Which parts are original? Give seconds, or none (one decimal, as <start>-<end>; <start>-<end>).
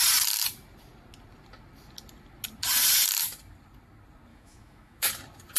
0.0-4.3; 5.1-5.6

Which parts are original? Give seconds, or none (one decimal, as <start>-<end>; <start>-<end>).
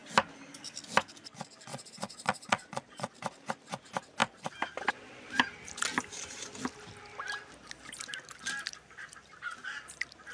0.0-1.7; 3.1-10.3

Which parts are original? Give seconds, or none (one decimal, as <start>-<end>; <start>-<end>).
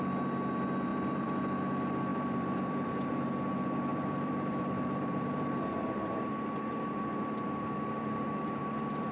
0.0-0.9; 1.4-2.1; 3.3-3.9; 8.6-9.1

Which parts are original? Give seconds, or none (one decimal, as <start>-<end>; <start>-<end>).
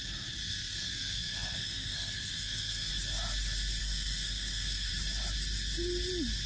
0.0-0.4; 2.9-3.8; 4.9-6.5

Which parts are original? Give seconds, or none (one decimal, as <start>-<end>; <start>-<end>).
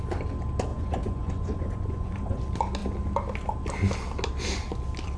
0.0-0.7; 2.4-5.2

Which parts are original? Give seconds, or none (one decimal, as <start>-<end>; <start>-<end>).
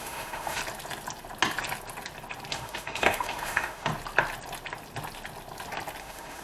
0.6-2.5; 3.9-6.0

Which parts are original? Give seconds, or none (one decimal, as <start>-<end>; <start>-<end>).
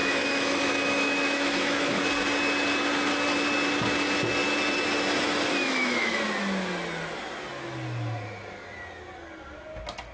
2.0-5.6; 6.2-10.1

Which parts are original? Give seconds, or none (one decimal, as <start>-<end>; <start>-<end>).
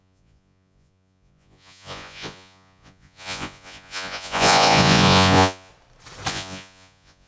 5.7-6.3